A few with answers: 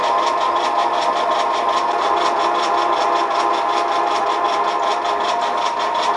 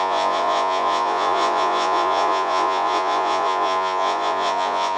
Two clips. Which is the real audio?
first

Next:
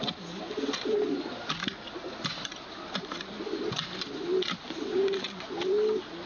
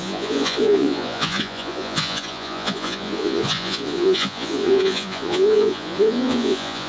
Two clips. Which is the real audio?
first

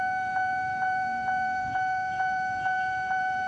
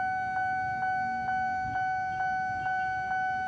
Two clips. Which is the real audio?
second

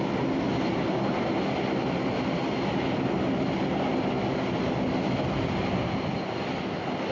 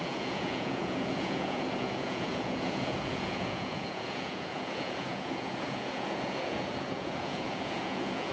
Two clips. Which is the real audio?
first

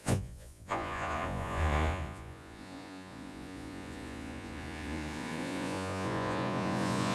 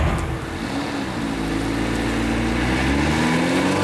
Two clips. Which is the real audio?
second